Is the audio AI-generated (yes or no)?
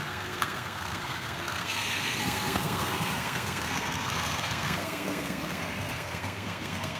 yes